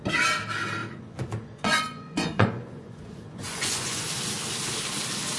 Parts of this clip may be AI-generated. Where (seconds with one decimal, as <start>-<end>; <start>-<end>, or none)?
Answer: 0.8-4.0